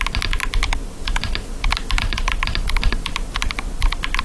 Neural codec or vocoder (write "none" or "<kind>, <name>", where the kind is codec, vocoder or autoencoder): vocoder, BigVGAN v2